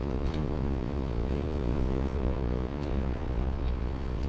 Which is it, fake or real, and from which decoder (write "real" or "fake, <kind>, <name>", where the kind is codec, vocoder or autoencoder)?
fake, vocoder, Vocos